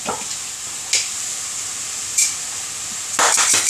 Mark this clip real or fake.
real